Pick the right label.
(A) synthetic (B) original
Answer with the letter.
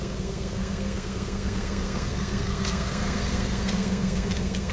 A